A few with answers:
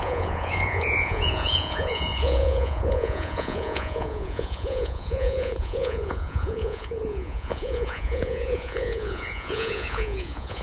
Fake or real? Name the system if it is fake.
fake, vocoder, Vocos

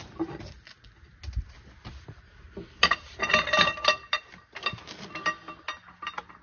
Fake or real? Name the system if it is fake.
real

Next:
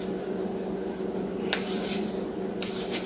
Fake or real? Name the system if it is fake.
real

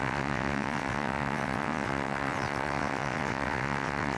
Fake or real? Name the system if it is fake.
fake, vocoder, WaveNeXt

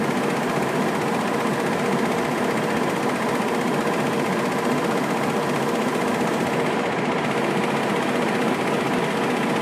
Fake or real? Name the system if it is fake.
real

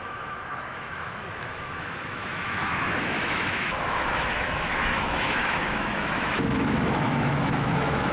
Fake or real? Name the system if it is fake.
fake, autoencoder, DAC-VAE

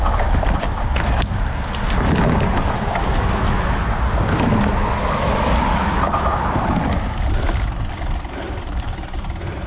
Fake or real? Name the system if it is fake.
real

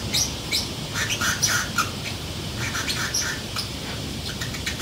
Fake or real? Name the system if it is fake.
fake, vocoder, BigVGAN v2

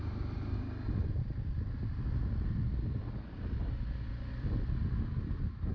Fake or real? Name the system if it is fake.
real